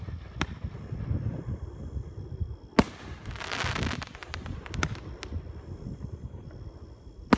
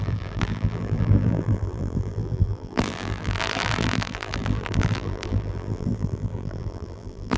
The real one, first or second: first